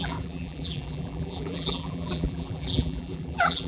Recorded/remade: remade